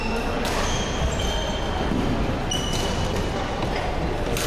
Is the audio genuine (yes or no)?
yes